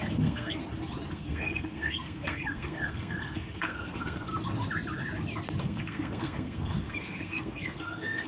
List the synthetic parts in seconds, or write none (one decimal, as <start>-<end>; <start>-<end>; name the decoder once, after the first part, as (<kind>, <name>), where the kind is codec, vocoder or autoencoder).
0.0-0.6 (codec, SNAC); 1.1-4.3; 5.6-8.3